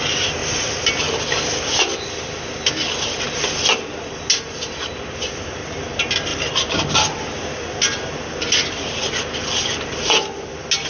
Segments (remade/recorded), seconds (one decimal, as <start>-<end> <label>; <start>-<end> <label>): 0.0-10.9 recorded